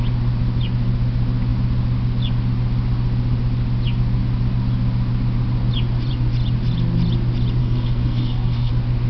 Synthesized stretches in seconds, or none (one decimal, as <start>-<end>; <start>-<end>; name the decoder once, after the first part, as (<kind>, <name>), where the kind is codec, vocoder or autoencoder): 7.6-8.7 (codec, SNAC)